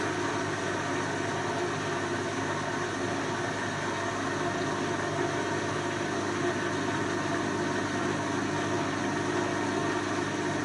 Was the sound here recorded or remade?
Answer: recorded